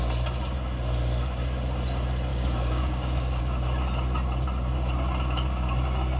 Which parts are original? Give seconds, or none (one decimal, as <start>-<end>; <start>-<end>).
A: 0.0-2.3; 3.4-6.2

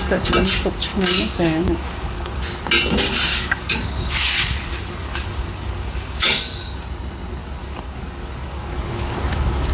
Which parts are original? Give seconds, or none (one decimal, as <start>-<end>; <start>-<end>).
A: 0.0-0.9; 2.4-3.3; 6.8-7.4